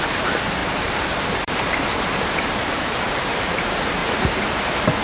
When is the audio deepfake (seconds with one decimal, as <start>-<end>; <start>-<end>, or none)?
0.6-3.6; 4.0-4.6